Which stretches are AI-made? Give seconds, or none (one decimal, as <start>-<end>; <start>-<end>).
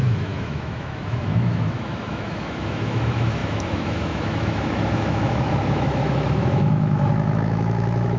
0.0-8.2